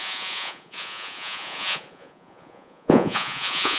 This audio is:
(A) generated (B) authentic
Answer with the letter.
A